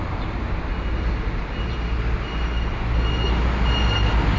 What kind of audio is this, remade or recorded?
recorded